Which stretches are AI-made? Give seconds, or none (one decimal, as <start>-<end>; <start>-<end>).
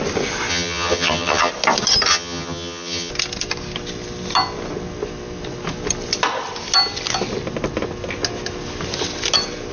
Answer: 0.5-1.5; 2.1-3.1